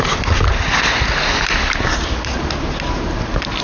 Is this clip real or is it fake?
real